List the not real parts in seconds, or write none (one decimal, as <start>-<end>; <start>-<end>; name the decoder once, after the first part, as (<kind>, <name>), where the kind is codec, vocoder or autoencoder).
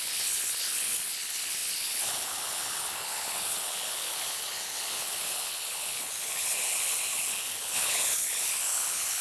0.0-9.2 (codec, HILCodec)